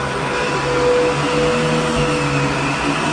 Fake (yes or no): no